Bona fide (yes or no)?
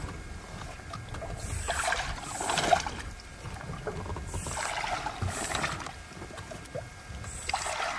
yes